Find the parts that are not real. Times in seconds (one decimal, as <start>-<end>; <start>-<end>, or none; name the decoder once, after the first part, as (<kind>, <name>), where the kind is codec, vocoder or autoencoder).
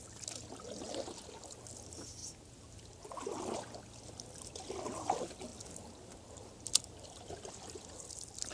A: none